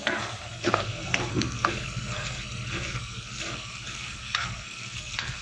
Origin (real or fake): fake